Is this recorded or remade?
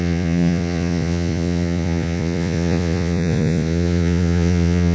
remade